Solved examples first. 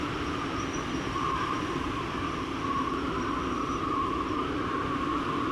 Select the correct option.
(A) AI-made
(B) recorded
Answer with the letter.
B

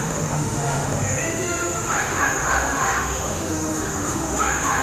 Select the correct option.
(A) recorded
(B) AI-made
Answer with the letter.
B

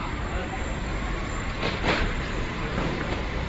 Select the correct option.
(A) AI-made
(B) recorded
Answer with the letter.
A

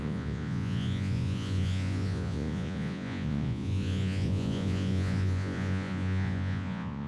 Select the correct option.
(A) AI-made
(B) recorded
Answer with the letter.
A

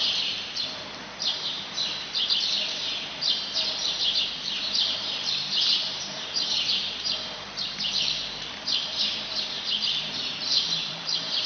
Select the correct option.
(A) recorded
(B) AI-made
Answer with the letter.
B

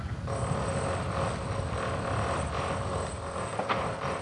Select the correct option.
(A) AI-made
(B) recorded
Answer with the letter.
B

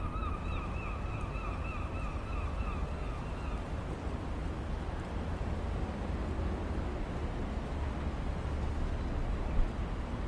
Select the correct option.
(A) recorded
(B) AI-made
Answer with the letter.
A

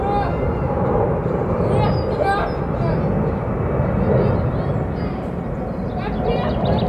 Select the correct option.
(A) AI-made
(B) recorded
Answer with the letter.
B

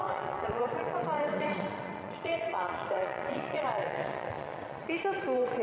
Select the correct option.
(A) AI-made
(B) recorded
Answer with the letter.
A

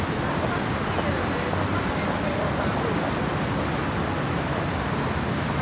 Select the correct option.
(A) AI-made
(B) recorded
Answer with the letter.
B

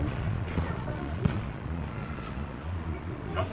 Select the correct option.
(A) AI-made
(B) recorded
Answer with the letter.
A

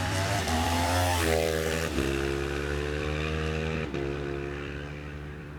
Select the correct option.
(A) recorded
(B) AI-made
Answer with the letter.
B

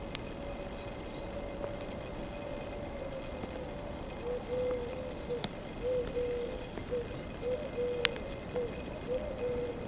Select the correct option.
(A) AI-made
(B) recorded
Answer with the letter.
B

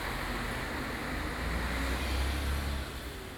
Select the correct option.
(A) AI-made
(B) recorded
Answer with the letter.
B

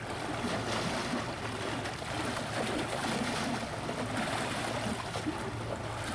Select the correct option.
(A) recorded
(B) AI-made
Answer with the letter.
A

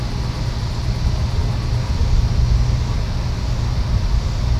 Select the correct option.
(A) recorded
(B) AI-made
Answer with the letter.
A